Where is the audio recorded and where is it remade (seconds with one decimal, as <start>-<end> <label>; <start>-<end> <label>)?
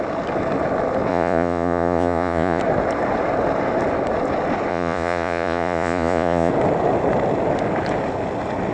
0.0-1.1 recorded; 1.1-2.6 remade; 2.6-4.7 recorded; 4.7-6.5 remade; 6.5-8.7 recorded